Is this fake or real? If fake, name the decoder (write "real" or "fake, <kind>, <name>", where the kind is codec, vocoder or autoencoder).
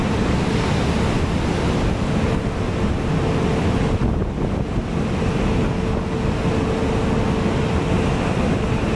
real